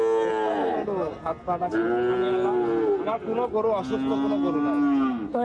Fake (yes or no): no